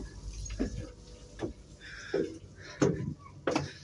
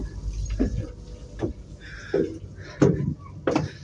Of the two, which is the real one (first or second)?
first